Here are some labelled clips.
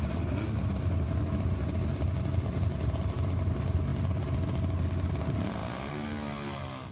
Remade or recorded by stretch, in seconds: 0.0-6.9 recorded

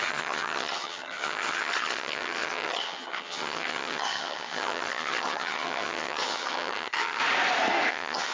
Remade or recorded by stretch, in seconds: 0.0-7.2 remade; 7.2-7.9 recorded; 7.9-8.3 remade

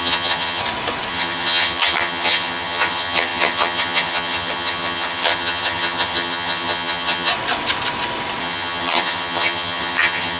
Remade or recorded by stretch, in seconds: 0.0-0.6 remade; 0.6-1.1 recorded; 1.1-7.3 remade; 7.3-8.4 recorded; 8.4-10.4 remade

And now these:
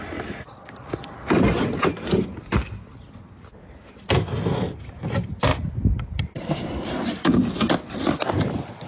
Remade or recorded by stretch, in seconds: 0.0-8.9 recorded

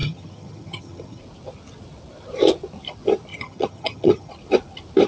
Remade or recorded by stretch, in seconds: 0.0-1.2 remade; 1.2-3.3 recorded; 3.3-4.3 remade; 4.3-5.1 recorded